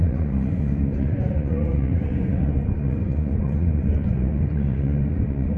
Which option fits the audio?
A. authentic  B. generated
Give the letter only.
B